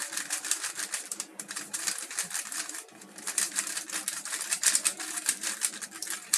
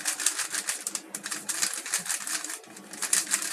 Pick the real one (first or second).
second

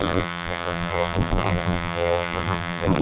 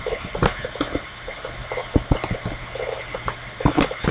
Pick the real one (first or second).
second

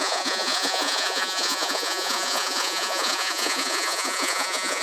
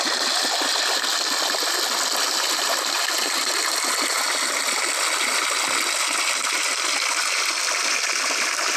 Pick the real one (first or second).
second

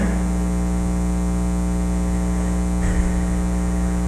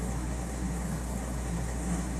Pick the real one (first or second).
first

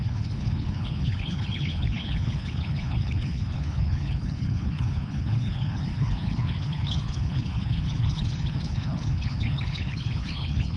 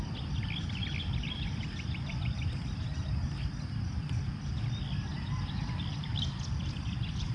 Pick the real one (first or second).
second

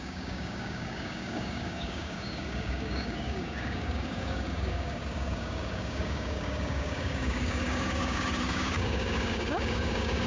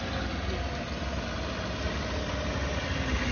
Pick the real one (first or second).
second